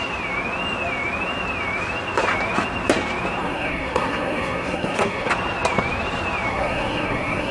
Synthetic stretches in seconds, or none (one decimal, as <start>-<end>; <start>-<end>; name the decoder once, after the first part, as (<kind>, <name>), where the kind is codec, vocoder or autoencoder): 3.4-5.3 (codec, SNAC); 6.5-7.5